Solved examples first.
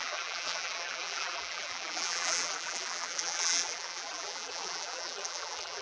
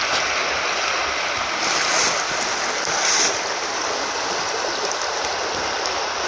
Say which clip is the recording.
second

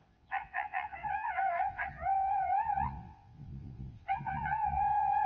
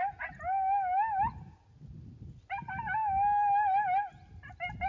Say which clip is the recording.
second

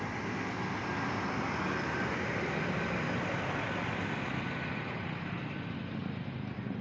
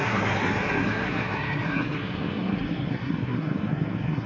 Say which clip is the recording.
first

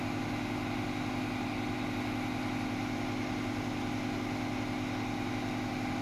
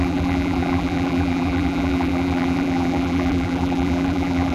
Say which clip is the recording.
first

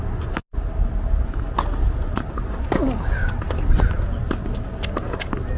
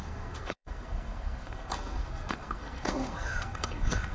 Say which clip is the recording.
first